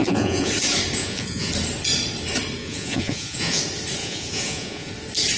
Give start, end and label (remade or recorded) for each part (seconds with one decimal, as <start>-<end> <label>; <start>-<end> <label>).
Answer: 0.0-0.5 remade; 0.5-1.0 recorded; 1.0-1.5 remade; 1.5-2.6 recorded; 2.6-3.6 remade; 3.6-4.0 recorded; 4.0-4.9 remade; 4.9-5.4 recorded